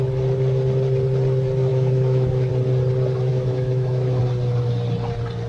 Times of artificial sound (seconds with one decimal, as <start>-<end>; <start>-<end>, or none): 1.7-2.5; 3.3-4.2